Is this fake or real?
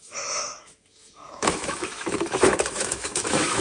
fake